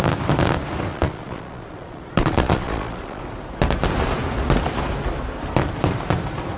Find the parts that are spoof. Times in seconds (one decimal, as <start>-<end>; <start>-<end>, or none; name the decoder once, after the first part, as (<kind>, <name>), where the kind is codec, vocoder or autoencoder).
0.9-3.2 (vocoder, Vocos)